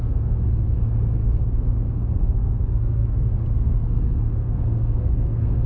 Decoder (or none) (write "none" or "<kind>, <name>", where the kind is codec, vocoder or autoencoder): codec, SNAC